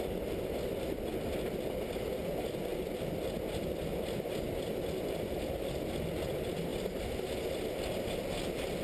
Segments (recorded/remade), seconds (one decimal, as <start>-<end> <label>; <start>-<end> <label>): 0.0-8.8 recorded